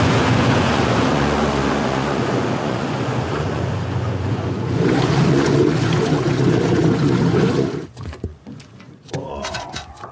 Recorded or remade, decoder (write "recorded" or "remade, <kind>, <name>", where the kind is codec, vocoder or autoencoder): remade, vocoder, Vocos